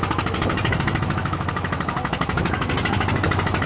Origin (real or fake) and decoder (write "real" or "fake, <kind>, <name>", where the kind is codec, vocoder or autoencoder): fake, autoencoder, DAC-VAE